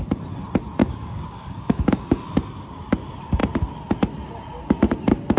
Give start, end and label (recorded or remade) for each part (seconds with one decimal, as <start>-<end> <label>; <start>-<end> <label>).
0.0-0.8 recorded; 0.8-2.2 remade; 2.2-5.4 recorded